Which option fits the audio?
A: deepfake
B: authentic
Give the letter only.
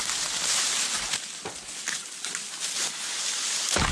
B